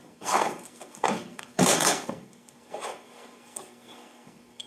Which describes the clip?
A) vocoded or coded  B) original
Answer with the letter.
A